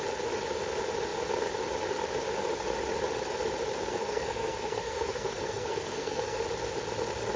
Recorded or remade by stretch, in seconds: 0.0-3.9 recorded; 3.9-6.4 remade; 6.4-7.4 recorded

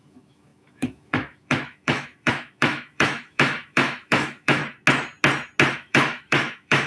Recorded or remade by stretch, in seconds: 0.0-4.6 remade; 4.6-5.7 recorded; 5.7-6.9 remade

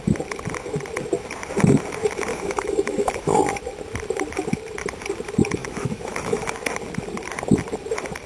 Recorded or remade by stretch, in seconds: 0.0-2.3 recorded; 2.3-3.4 remade; 3.4-5.6 recorded; 5.6-6.5 remade; 6.5-8.3 recorded

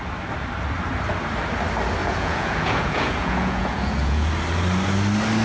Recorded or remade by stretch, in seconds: 0.0-2.0 recorded; 2.0-4.3 remade; 4.3-5.4 recorded

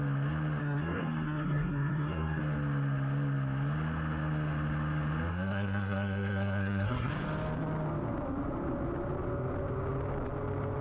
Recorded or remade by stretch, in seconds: 0.0-0.6 recorded; 0.6-2.4 remade; 2.4-5.3 recorded; 5.3-7.1 remade; 7.1-10.8 recorded

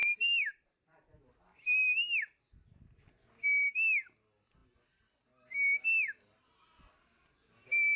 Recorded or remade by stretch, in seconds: 0.0-1.2 remade; 1.2-8.0 recorded

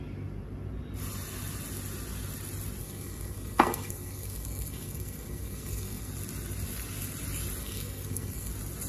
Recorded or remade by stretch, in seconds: 0.0-2.8 recorded; 2.8-6.1 remade; 6.1-7.6 recorded; 7.6-8.5 remade; 8.5-8.9 recorded